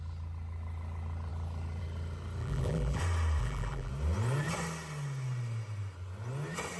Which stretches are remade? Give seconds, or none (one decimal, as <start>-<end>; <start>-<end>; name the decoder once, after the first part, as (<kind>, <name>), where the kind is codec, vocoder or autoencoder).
2.4-3.0 (vocoder, BigVGAN v2); 3.4-3.9